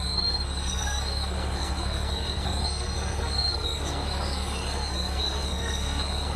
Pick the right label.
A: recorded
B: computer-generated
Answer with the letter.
B